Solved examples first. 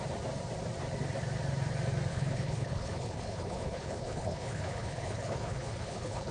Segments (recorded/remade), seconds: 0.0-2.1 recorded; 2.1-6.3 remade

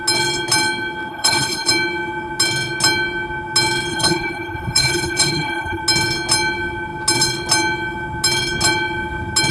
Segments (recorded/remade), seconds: 0.0-1.1 recorded; 1.1-1.7 remade; 1.7-3.9 recorded; 3.9-5.8 remade; 5.8-9.5 recorded

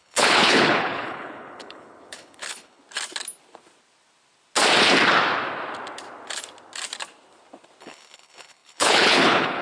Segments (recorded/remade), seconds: 0.0-2.8 remade; 2.8-7.8 recorded; 7.8-9.6 remade

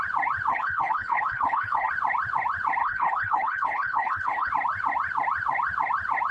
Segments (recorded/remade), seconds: 0.0-0.5 recorded; 0.5-1.9 remade; 1.9-2.8 recorded; 2.8-4.5 remade; 4.5-6.3 recorded

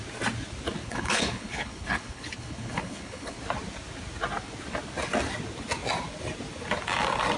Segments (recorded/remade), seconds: 0.0-0.8 recorded; 0.8-3.4 remade; 3.4-7.4 recorded

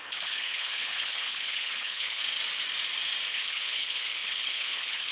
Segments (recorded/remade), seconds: 0.0-2.2 remade; 2.2-3.3 recorded; 3.3-5.1 remade

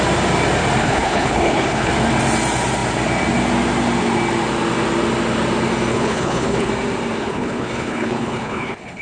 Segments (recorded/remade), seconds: 0.0-0.8 recorded; 0.8-1.9 remade; 1.9-5.9 recorded; 5.9-6.7 remade; 6.7-7.2 recorded; 7.2-9.0 remade